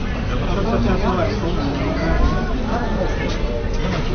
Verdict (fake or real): real